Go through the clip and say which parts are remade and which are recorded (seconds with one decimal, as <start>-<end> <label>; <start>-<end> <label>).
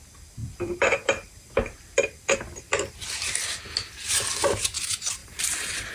0.0-0.4 recorded; 0.4-3.0 remade; 3.0-5.2 recorded; 5.2-5.9 remade